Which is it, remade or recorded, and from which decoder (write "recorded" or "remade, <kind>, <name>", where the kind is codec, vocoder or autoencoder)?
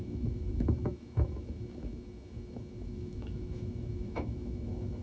remade, autoencoder, DAC-VAE